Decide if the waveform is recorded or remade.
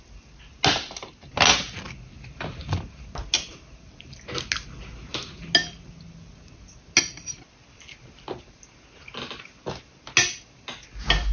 recorded